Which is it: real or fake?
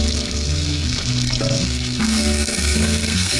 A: fake